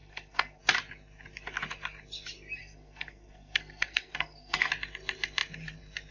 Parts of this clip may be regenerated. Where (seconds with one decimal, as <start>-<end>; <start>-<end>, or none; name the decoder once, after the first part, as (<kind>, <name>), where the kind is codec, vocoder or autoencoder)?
0.0-0.6 (codec, SNAC); 2.6-4.7